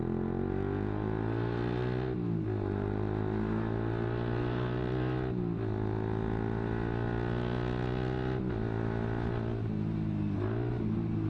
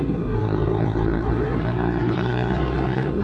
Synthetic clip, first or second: second